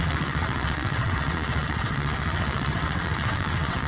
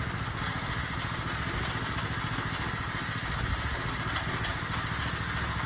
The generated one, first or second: first